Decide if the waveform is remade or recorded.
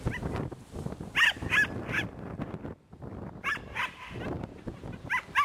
recorded